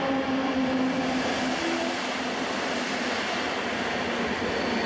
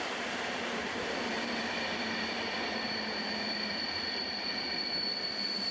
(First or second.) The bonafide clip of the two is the first